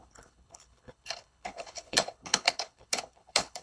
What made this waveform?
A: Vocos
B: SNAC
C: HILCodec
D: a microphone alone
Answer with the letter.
C